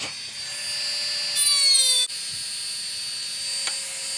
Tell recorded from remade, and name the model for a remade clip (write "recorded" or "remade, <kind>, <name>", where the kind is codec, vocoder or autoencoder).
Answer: recorded